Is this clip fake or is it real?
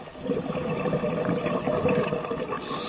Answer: real